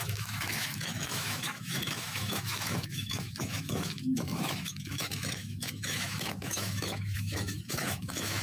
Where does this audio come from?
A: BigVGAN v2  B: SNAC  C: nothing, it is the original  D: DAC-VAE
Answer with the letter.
D